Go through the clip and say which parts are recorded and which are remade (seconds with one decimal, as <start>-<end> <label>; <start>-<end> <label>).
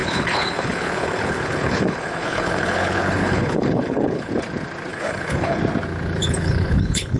0.0-4.3 remade; 4.3-4.9 recorded; 4.9-5.6 remade; 5.6-6.2 recorded; 6.2-7.2 remade